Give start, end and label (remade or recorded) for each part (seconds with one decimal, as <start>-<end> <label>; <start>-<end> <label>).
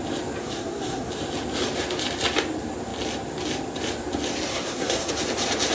0.0-0.4 recorded; 0.4-1.1 remade; 1.1-4.5 recorded; 4.5-5.1 remade; 5.1-5.7 recorded